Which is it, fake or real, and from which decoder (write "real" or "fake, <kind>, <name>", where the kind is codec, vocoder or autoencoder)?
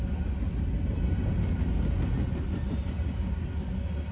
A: real